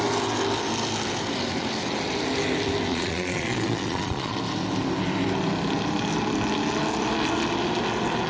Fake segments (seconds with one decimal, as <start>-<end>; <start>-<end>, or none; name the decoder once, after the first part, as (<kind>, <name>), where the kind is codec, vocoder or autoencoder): 2.9-4.4 (vocoder, Vocos)